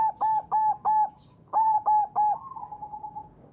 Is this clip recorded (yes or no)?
no